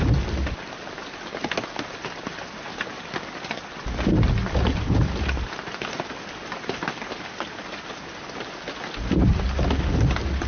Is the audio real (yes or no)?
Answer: yes